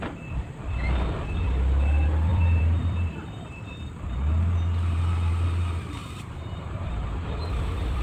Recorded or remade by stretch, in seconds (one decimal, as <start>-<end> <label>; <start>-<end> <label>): 0.0-2.3 recorded; 2.3-3.9 remade; 3.9-6.0 recorded; 6.0-8.0 remade